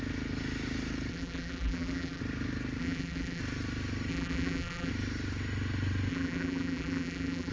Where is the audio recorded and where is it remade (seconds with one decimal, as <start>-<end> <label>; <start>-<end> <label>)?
0.0-1.1 recorded; 1.1-2.2 remade; 2.2-2.8 recorded; 2.8-3.4 remade; 3.4-4.1 recorded; 4.1-4.9 remade; 4.9-6.1 recorded; 6.1-7.5 remade